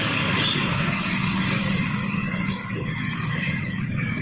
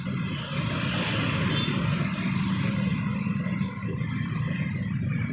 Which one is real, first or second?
second